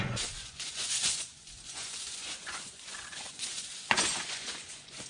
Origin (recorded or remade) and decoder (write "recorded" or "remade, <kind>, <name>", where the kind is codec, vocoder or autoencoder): remade, vocoder, Vocos